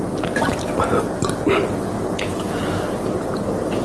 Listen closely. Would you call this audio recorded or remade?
recorded